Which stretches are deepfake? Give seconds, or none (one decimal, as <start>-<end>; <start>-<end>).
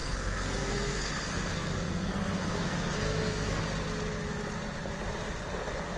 0.0-3.6